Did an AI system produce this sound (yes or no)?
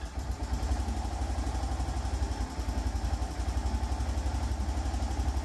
no